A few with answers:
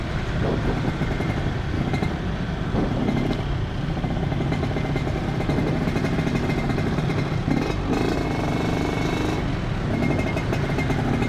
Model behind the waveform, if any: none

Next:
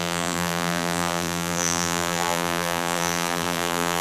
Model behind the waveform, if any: vocoder, BigVGAN v2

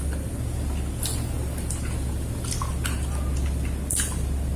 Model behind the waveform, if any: none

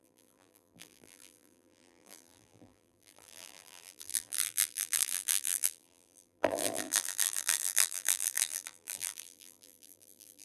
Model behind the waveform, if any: vocoder, BigVGAN v2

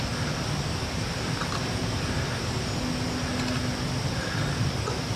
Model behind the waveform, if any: none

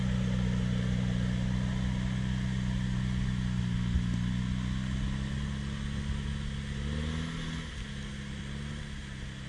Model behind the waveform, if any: none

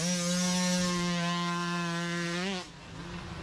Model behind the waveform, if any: none